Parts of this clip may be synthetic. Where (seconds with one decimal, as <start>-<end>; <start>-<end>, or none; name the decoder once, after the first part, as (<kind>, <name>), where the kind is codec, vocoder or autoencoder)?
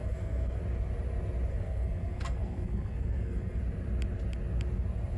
0.0-0.6 (codec, SNAC); 1.5-3.6